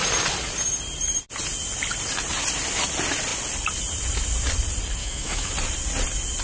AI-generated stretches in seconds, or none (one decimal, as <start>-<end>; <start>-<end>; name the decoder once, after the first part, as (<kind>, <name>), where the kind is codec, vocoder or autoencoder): 5.0-5.5 (autoencoder, DAC-VAE)